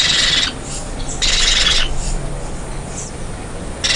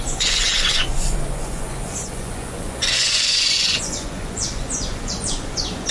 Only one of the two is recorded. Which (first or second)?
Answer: first